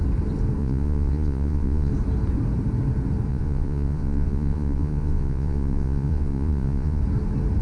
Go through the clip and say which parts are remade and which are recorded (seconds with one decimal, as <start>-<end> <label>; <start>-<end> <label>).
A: 0.0-0.6 recorded; 0.6-1.9 remade; 1.9-3.3 recorded; 3.3-7.0 remade; 7.0-7.6 recorded